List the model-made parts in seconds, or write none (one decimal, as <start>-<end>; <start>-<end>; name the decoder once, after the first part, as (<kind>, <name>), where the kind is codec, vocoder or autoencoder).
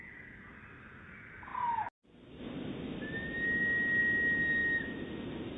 none